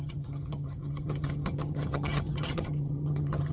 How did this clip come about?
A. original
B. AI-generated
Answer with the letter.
B